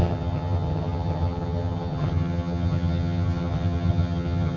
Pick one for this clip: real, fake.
fake